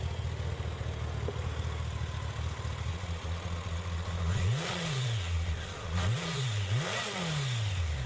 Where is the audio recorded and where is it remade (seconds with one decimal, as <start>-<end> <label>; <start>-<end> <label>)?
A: 0.0-2.9 recorded; 2.9-7.2 remade; 7.2-8.1 recorded